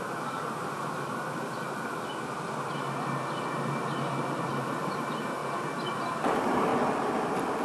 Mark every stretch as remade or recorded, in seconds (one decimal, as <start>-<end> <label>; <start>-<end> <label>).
0.0-2.1 remade; 2.1-4.5 recorded; 4.5-5.4 remade; 5.4-6.3 recorded; 6.3-6.7 remade; 6.7-7.6 recorded